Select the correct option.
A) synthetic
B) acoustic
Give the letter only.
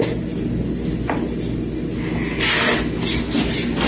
B